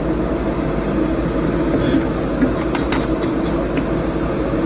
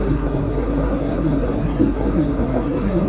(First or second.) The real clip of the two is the first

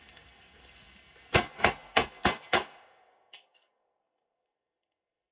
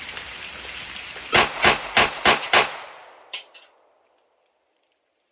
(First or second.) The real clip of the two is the second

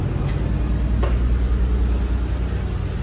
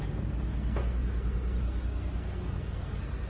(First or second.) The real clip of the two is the first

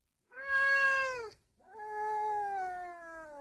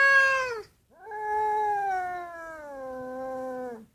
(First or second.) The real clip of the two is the second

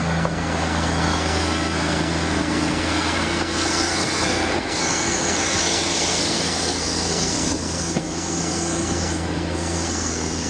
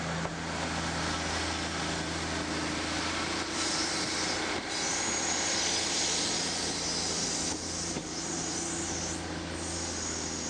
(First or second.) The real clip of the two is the second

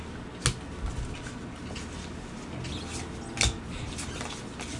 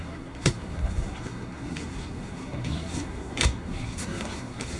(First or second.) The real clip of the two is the first